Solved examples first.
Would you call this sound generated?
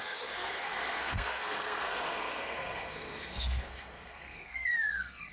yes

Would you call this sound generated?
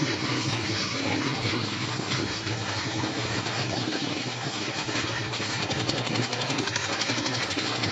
yes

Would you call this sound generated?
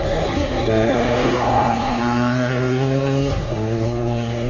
yes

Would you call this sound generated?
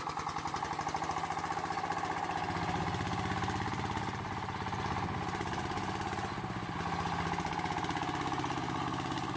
no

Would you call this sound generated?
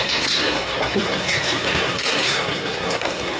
yes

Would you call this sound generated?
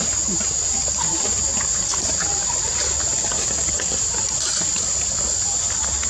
no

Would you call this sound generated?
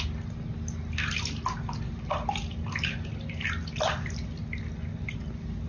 no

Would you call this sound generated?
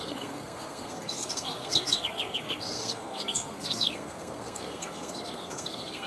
yes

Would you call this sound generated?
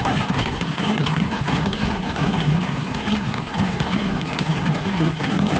yes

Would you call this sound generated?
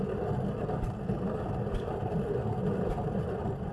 no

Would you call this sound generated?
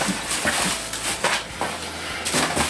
no